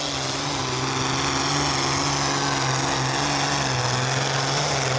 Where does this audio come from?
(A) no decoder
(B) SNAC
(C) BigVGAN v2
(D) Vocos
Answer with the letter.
A